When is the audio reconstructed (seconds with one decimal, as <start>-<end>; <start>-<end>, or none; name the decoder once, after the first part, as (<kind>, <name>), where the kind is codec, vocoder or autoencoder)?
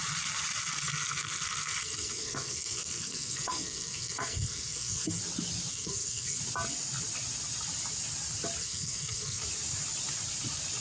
0.8-5.2 (codec, SNAC); 5.7-6.4; 8.6-9.4